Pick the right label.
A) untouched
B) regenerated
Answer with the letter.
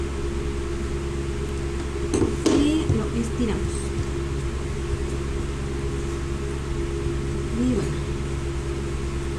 A